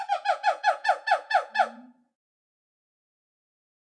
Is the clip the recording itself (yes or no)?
no